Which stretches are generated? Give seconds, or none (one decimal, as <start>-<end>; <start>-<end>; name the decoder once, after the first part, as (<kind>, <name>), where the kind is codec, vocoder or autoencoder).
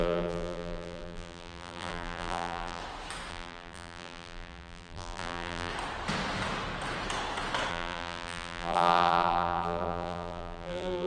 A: 0.0-2.8 (vocoder, BigVGAN v2); 3.3-5.7; 7.7-11.1